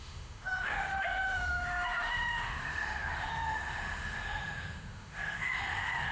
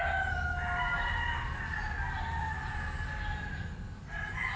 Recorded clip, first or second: second